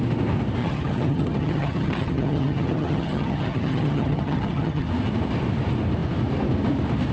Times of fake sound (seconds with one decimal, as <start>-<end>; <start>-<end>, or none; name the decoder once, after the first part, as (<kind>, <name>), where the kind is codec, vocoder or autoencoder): 0.6-4.9 (vocoder, HiFi-GAN)